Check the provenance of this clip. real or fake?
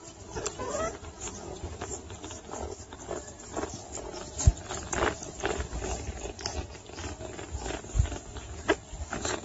fake